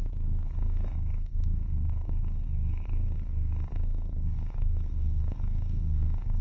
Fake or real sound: fake